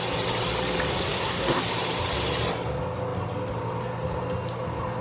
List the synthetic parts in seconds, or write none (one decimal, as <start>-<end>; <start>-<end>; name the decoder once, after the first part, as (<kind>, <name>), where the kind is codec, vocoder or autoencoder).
0.9-1.6 (codec, SNAC)